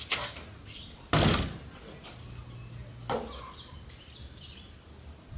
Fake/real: real